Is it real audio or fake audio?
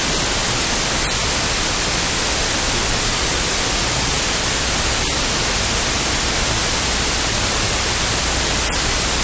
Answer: real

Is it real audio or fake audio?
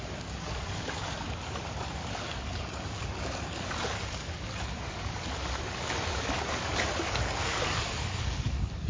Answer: fake